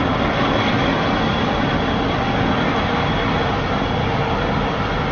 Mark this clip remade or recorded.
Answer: recorded